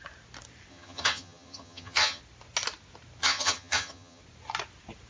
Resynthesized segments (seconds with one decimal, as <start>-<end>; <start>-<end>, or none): 0.7-2.2; 3.2-4.2

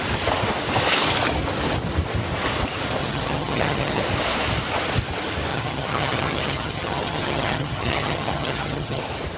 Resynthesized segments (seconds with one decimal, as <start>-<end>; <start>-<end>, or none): 3.0-4.0; 5.5-9.0

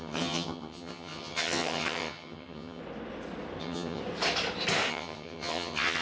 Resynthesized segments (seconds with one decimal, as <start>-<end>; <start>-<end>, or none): 0.0-2.8; 3.6-4.0; 4.9-6.0